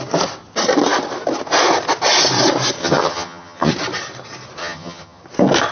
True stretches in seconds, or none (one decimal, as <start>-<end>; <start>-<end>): 0.0-2.8; 3.7-4.6; 5.2-5.7